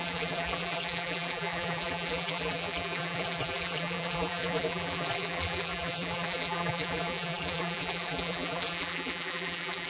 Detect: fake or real fake